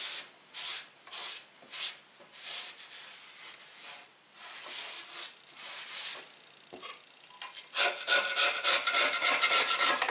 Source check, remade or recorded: recorded